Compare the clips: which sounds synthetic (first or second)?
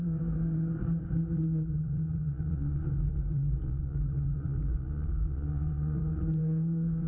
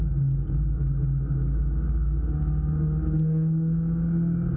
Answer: first